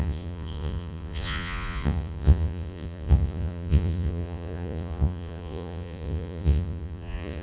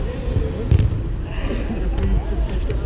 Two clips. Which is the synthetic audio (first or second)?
first